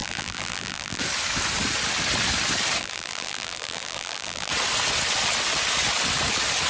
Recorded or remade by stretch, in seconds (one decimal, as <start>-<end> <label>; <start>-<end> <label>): 0.0-1.0 remade; 1.0-2.8 recorded; 2.8-4.5 remade; 4.5-6.7 recorded

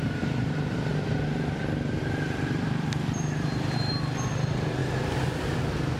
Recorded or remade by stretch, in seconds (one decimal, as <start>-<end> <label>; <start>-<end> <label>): 0.0-0.9 recorded; 0.9-3.9 remade; 3.9-6.0 recorded